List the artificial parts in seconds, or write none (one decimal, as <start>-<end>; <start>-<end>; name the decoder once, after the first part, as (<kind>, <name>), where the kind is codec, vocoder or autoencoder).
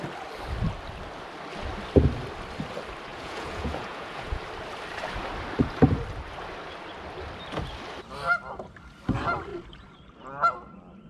3.1-4.4 (vocoder, Vocos)